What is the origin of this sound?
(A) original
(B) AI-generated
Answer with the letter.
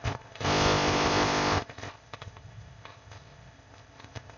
B